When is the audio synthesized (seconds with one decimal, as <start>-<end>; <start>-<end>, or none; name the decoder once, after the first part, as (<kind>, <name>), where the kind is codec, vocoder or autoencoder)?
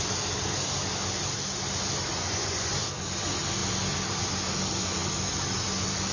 2.1-2.7 (vocoder, Vocos)